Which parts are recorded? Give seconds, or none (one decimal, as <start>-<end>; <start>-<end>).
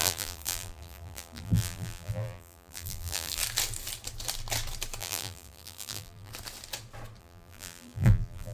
3.4-5.0; 6.3-7.2